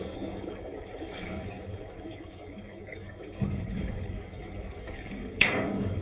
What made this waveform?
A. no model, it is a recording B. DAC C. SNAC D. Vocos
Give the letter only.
B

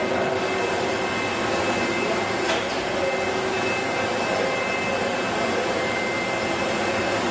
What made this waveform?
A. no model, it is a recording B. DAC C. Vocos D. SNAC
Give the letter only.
A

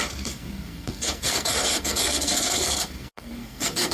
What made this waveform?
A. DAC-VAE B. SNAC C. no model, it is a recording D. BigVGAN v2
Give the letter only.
B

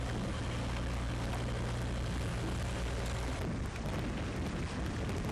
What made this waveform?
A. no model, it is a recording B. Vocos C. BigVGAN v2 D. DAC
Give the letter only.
A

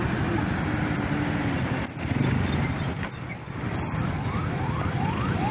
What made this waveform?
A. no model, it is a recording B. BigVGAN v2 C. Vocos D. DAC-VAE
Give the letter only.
A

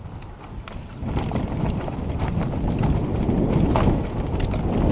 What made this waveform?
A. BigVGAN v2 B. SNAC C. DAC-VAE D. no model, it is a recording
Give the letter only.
D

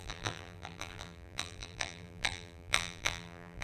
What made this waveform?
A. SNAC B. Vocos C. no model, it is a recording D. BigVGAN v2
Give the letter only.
D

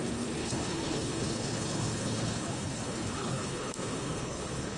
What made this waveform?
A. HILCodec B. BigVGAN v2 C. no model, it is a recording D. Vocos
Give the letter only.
A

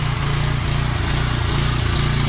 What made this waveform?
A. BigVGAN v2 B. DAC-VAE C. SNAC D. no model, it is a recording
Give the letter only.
D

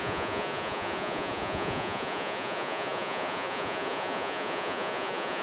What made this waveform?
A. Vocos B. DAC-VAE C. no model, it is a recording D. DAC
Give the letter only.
A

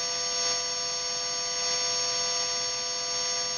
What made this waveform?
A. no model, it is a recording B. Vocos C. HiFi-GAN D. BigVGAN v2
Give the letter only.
A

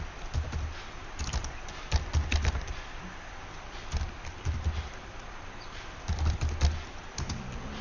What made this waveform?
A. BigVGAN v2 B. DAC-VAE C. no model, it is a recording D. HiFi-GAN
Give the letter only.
C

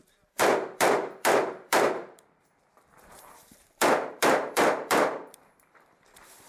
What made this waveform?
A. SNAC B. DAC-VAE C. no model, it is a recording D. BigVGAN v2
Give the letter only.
D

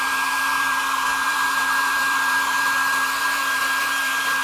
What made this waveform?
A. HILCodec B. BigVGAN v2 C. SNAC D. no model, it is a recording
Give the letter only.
B